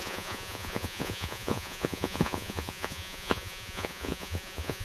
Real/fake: fake